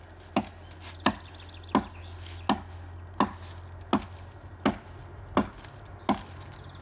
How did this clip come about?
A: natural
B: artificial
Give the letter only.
A